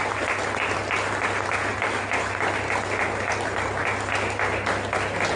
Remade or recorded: recorded